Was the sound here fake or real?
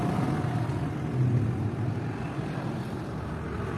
real